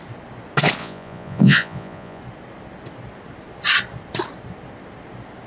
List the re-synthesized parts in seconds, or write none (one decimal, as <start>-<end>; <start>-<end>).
0.8-2.2